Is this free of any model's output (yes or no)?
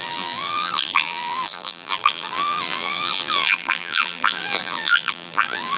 no